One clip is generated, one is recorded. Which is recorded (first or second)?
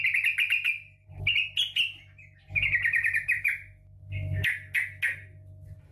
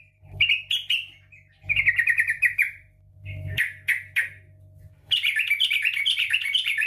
first